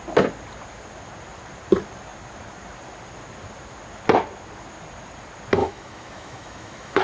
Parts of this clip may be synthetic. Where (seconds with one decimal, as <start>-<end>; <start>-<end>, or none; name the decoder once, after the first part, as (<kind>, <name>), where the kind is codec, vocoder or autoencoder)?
5.6-7.0 (autoencoder, DAC-VAE)